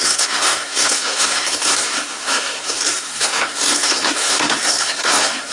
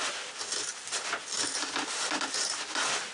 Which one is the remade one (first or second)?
first